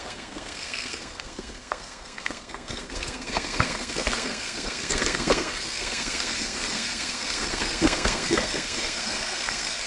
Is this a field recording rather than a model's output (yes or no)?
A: no